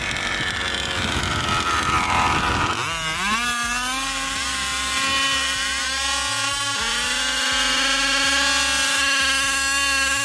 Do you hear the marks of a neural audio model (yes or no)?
no